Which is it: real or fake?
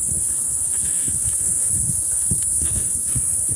fake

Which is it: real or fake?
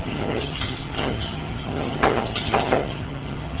fake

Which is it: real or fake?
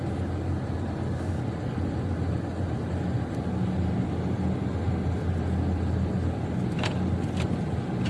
real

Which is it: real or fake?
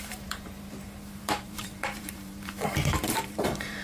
fake